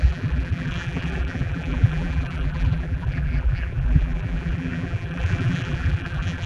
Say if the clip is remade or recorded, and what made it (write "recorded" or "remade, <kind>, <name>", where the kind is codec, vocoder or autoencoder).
remade, vocoder, BigVGAN v2